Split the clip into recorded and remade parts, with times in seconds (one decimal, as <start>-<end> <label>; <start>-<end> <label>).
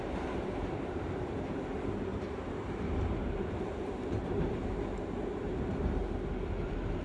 0.0-6.0 remade; 6.0-6.6 recorded; 6.6-7.0 remade